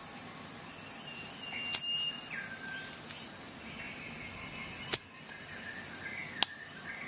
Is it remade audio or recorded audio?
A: recorded